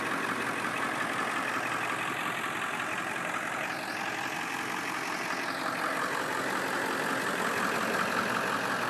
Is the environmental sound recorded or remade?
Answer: recorded